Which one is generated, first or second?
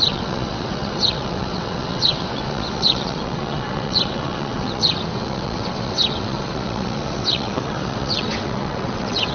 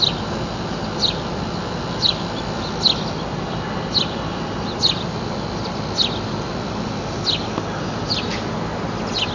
first